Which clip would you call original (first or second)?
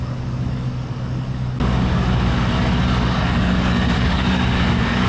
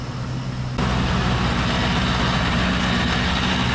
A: second